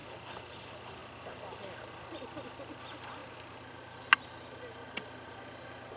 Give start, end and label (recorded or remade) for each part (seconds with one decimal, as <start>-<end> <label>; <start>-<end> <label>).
0.0-6.0 recorded